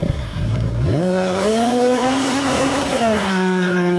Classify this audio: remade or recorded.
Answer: remade